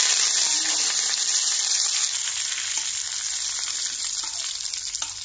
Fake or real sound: real